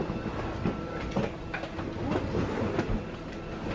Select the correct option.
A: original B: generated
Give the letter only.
A